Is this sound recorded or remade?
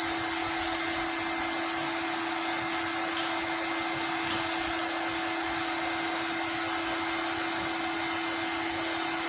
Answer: recorded